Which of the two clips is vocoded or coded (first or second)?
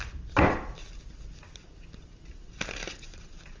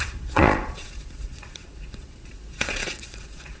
second